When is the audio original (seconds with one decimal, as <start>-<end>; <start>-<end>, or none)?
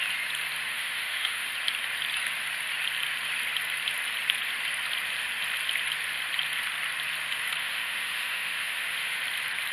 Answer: 0.0-0.7; 1.5-7.6; 9.2-9.7